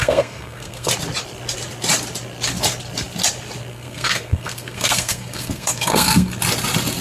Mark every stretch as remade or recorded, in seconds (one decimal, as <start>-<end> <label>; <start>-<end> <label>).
0.0-0.9 remade; 0.9-3.7 recorded; 3.7-6.4 remade; 6.4-7.0 recorded